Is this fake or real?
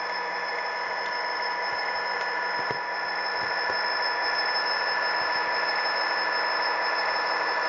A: real